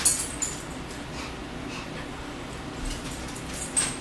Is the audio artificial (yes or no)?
no